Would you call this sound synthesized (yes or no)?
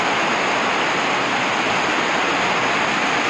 no